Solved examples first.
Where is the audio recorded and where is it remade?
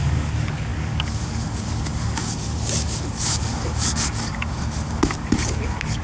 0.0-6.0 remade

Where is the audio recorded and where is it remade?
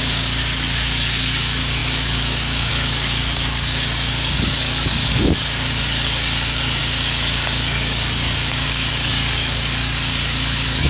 0.0-10.9 remade